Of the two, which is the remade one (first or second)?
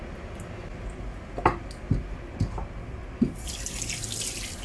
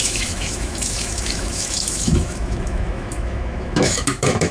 second